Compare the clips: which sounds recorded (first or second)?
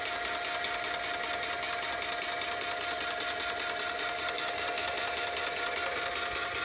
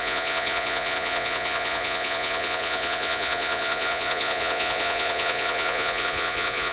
first